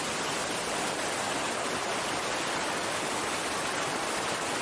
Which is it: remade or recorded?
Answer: recorded